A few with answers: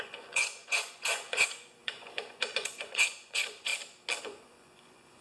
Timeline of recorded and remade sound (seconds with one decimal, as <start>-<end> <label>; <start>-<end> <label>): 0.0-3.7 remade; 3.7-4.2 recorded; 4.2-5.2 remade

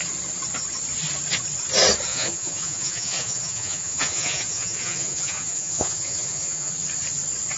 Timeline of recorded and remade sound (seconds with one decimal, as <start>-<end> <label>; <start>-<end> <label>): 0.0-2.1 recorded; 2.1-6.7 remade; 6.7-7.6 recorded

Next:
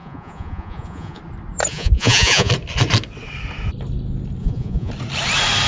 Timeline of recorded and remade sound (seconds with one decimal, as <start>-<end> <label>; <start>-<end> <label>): 0.0-1.2 remade; 1.2-1.7 recorded; 1.7-2.5 remade; 2.5-4.4 recorded; 4.4-4.9 remade; 4.9-5.7 recorded

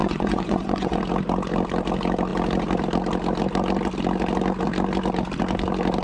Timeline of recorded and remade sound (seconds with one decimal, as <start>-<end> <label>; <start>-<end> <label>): 0.0-1.0 remade; 1.0-6.0 recorded

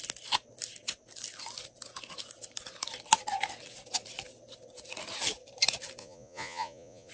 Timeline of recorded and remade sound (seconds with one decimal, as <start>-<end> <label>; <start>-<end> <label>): 0.0-6.0 recorded; 6.0-7.1 remade

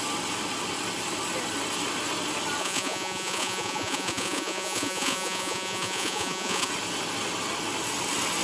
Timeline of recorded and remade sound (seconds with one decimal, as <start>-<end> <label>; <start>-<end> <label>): 0.0-2.6 recorded; 2.6-6.7 remade; 6.7-8.4 recorded

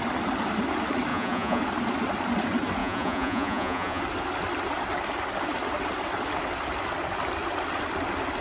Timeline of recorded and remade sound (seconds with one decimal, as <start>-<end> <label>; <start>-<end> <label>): 0.0-1.1 recorded; 1.1-1.6 remade; 1.6-2.8 recorded; 2.8-4.0 remade; 4.0-8.4 recorded

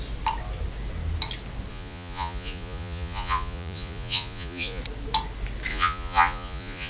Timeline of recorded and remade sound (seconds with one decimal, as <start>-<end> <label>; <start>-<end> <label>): 0.0-1.7 recorded; 1.7-4.8 remade; 4.8-5.7 recorded; 5.7-6.9 remade